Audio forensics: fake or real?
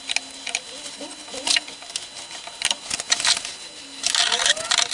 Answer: real